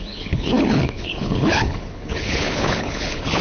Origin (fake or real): fake